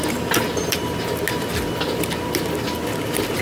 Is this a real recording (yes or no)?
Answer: yes